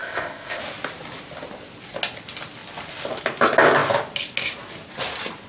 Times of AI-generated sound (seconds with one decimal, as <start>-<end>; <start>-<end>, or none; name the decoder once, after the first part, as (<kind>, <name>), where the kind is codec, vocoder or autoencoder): 0.0-0.6 (codec, ZipCodec)